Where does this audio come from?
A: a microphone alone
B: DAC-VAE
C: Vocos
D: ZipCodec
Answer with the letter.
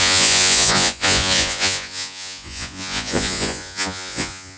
C